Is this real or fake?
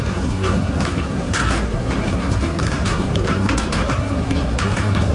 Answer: fake